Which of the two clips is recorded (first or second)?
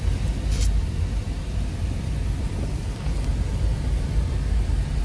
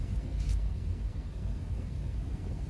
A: first